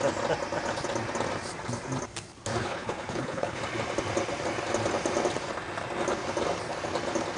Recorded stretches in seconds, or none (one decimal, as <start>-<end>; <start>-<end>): 0.0-2.6; 3.6-7.4